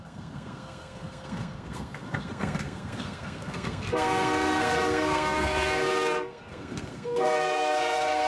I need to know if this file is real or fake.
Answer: fake